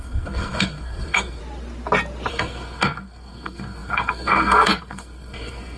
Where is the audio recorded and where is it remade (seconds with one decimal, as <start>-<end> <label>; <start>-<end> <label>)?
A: 0.0-1.4 remade; 1.4-2.3 recorded; 2.3-5.8 remade